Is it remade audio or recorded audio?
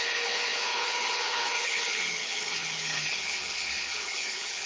remade